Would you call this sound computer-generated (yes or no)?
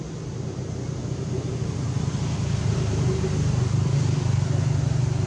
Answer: no